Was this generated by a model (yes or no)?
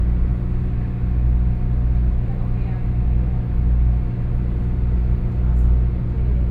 no